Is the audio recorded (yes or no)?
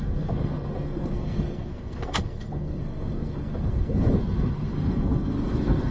no